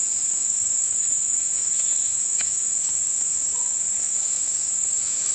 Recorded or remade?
remade